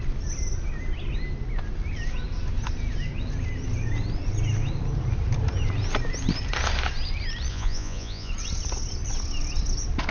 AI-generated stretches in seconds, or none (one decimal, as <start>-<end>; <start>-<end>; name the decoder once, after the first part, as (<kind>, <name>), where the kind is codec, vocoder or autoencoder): 7.5-8.3 (vocoder, Vocos)